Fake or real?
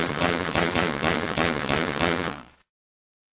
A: fake